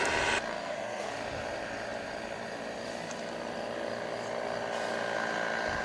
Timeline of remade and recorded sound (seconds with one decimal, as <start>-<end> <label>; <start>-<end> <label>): 0.0-0.5 recorded; 0.5-1.1 remade; 1.1-5.8 recorded